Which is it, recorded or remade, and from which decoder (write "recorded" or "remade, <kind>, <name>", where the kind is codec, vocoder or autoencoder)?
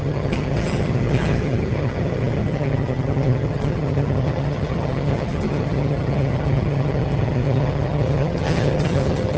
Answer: remade, vocoder, HiFi-GAN